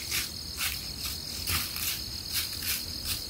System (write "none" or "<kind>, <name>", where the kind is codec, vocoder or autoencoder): none